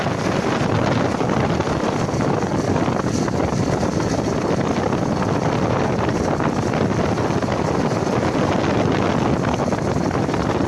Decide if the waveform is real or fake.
real